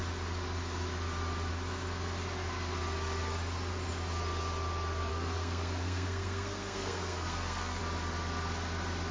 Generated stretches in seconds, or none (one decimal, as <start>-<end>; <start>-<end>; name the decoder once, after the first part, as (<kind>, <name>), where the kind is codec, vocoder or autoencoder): 5.1-7.8 (codec, SNAC)